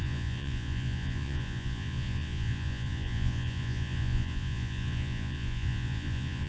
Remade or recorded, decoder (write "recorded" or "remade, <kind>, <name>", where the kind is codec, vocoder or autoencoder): remade, vocoder, Vocos